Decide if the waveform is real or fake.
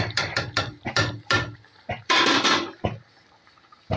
fake